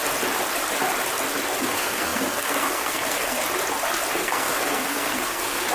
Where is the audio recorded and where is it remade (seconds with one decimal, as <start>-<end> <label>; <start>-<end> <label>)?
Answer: 0.0-1.6 recorded; 1.6-3.4 remade; 3.4-4.1 recorded; 4.1-5.7 remade